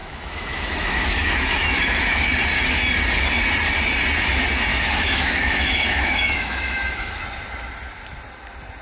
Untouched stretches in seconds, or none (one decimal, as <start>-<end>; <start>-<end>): 2.2-4.7; 7.2-8.8